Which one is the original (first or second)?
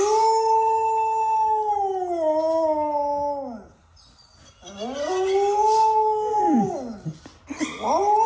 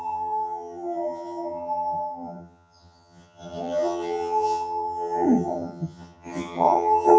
first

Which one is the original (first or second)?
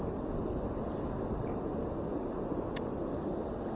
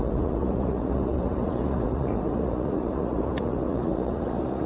first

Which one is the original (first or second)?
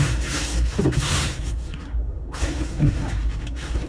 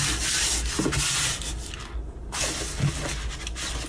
second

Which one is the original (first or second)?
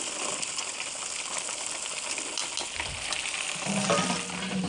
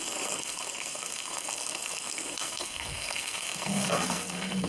first